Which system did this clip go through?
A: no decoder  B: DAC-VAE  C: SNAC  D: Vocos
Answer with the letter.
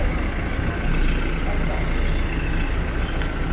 A